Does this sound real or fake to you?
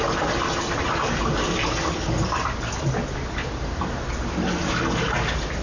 real